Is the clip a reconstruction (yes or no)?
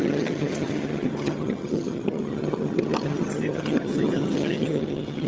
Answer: yes